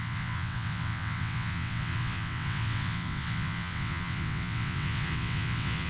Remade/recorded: remade